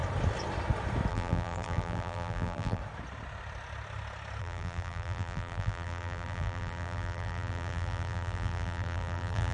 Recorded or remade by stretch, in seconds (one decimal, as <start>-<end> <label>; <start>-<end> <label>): 0.0-1.1 recorded; 1.1-2.8 remade; 2.8-4.4 recorded; 4.4-9.5 remade